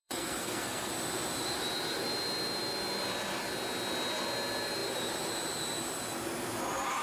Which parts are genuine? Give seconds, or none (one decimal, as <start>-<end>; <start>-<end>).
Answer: 0.9-7.0

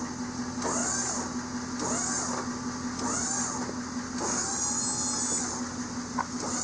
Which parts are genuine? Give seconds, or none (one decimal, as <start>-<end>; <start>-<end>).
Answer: 0.0-6.6

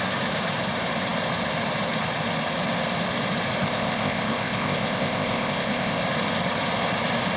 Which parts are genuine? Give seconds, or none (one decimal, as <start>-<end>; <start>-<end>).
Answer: 0.0-3.6; 6.0-7.4

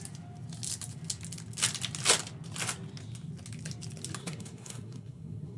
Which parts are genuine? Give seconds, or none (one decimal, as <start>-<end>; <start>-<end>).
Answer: 0.0-4.2

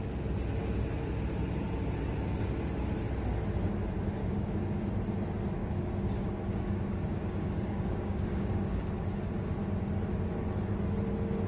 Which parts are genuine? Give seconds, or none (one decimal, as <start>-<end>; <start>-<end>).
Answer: 0.0-4.2; 4.9-5.6; 8.9-11.5

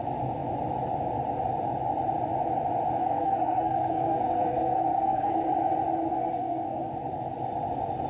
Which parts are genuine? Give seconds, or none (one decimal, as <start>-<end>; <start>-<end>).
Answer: 0.0-3.0; 5.5-6.1; 6.9-8.1

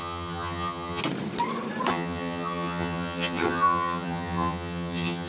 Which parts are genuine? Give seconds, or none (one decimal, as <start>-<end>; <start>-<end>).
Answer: 1.0-1.9

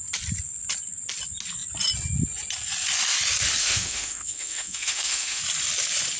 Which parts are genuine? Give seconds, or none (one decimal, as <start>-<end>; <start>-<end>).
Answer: 0.0-3.6; 5.4-6.2